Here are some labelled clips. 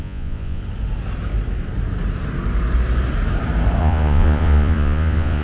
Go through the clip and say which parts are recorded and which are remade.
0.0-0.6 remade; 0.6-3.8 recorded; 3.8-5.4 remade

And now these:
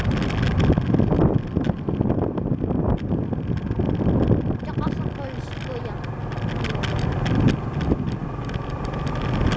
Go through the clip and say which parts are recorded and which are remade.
0.0-9.6 recorded